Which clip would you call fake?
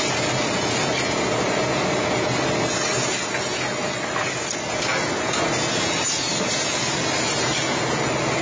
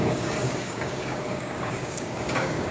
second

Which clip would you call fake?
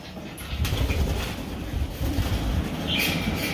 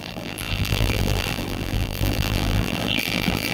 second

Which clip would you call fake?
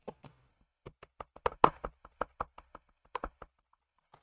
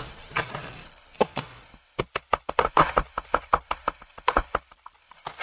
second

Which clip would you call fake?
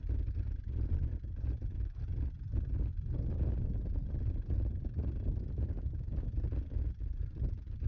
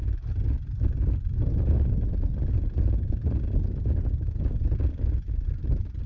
first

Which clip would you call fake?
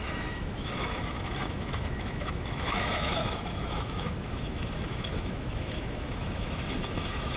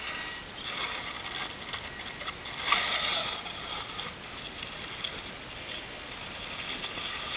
first